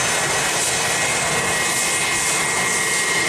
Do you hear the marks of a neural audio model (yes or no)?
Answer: no